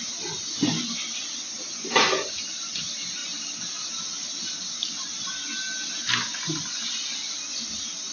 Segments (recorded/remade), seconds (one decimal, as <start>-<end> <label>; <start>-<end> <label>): 0.0-8.1 recorded